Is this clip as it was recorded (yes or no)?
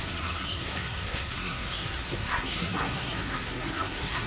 no